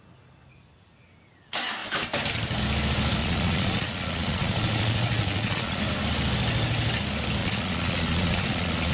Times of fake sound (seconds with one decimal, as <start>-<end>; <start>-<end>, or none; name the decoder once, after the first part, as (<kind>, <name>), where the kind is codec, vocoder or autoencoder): 3.2-5.8 (vocoder, Vocos); 7.4-8.9